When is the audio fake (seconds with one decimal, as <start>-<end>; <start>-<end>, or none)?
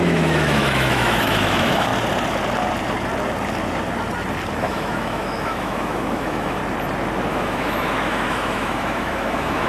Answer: 0.0-1.9; 4.6-6.6; 7.3-9.7